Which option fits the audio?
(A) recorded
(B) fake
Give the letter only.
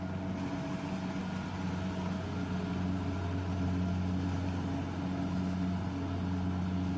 A